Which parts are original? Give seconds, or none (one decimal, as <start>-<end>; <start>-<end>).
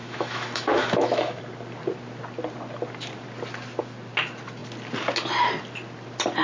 1.4-6.4